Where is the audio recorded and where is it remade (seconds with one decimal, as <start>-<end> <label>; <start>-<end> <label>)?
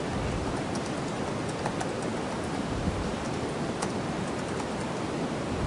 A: 0.0-2.1 recorded; 2.1-5.7 remade